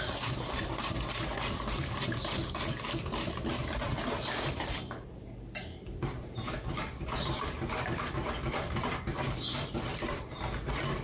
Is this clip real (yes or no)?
yes